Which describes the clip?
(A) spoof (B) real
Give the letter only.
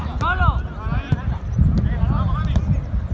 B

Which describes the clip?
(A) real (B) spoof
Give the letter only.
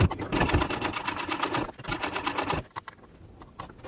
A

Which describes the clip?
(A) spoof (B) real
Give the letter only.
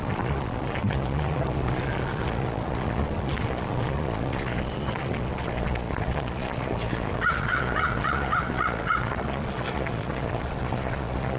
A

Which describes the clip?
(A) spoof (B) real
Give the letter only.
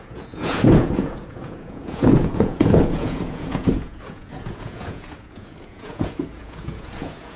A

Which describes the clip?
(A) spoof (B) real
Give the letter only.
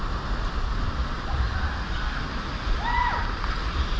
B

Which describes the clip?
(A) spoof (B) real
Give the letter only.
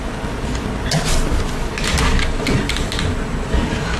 B